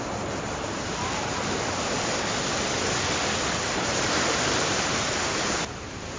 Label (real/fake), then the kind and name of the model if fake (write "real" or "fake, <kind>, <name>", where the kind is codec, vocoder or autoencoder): real